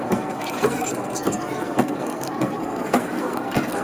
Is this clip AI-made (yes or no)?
yes